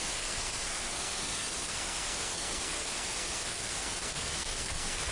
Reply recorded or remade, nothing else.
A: remade